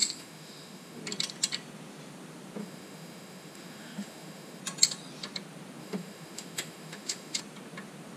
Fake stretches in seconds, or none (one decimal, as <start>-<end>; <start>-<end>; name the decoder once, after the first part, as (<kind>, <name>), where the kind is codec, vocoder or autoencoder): 0.0-1.0 (autoencoder, DAC-VAE); 2.6-4.6; 5.8-7.4